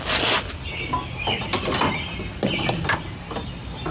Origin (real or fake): real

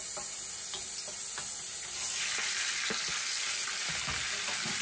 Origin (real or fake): real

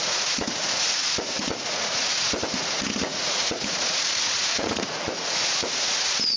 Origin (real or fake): fake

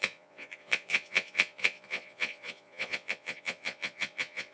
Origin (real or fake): fake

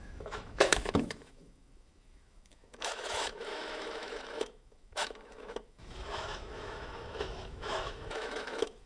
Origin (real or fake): fake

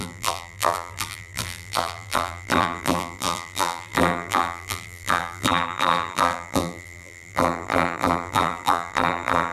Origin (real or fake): fake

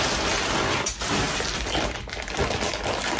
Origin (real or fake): real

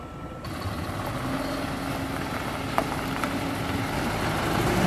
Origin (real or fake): real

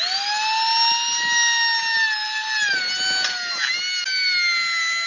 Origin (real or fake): real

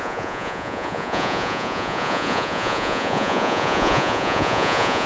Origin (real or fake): fake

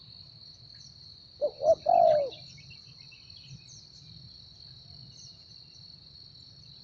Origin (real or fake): real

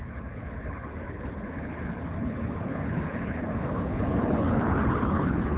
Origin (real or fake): fake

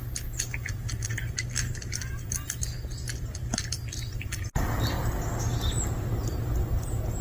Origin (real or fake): real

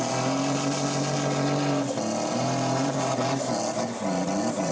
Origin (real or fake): real